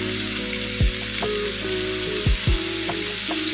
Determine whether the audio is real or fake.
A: real